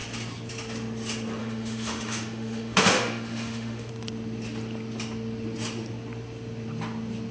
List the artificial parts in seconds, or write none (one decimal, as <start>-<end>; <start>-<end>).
1.4-3.9